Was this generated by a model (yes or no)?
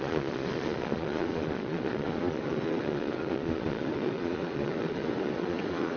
yes